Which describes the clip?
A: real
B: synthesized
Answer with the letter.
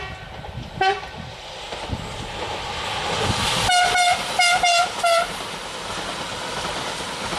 A